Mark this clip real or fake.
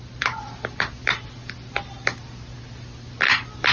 real